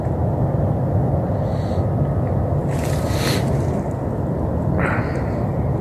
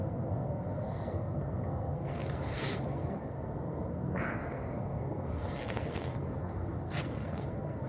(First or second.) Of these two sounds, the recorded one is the first